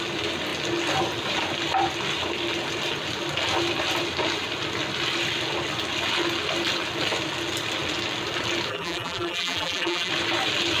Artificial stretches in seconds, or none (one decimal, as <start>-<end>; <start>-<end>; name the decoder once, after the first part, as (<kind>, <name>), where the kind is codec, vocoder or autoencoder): 8.7-10.1 (vocoder, BigVGAN v2)